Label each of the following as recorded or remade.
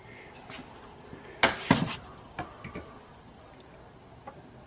recorded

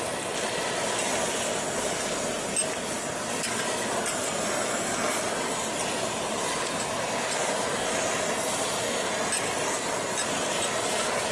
recorded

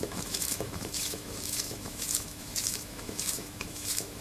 remade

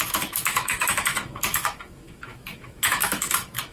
remade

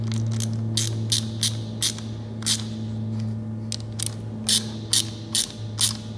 recorded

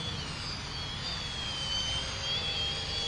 recorded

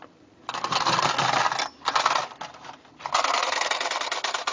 recorded